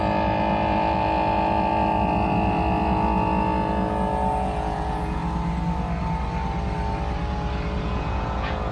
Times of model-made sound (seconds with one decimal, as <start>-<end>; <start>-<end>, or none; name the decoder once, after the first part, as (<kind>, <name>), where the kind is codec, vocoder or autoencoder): 0.0-5.2 (vocoder, Vocos); 7.8-8.7

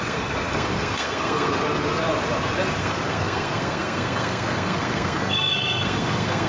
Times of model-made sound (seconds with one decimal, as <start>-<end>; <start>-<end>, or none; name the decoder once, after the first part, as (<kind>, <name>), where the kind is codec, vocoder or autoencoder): 0.0-1.5 (codec, SNAC); 2.8-6.5

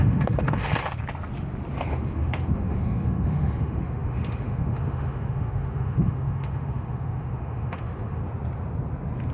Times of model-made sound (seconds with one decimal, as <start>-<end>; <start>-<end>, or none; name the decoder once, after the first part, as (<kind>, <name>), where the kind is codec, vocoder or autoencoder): 0.0-0.7 (autoencoder, DAC-VAE); 1.9-8.2